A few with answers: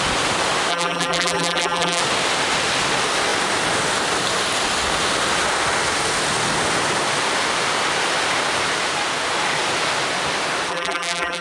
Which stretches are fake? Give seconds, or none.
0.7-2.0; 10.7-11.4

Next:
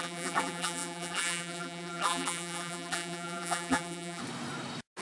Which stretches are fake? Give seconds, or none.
0.0-4.2

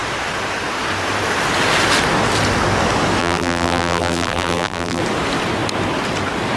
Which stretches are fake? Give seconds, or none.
3.2-5.0

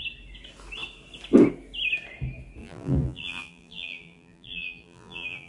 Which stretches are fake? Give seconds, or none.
2.6-5.5

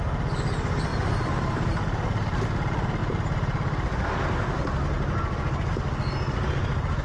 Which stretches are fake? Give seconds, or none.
0.9-1.7

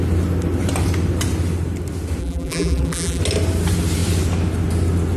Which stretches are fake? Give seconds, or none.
2.2-3.2

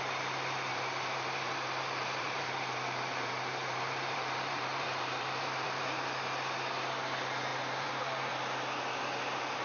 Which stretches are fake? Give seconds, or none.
0.7-5.8; 7.5-8.3